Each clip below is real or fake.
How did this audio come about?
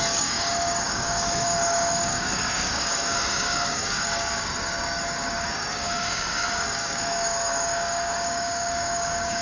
fake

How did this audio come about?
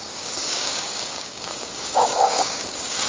fake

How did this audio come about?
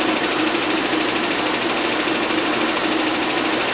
real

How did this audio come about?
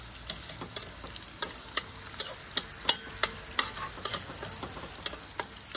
real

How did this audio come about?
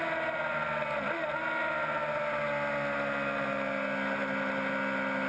real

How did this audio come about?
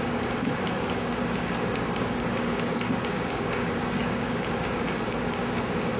fake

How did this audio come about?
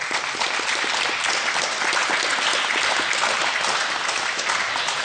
real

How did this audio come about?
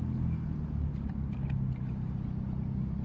real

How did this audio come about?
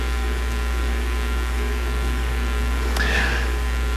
fake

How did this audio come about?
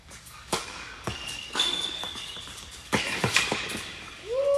fake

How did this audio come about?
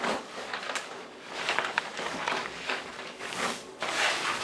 fake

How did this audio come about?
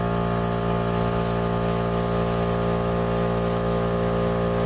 real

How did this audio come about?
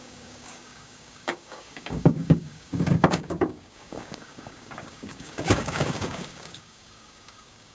fake